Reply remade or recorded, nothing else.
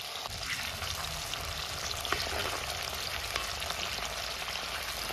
recorded